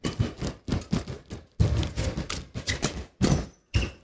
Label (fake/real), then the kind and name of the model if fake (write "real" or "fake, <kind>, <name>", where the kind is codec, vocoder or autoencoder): real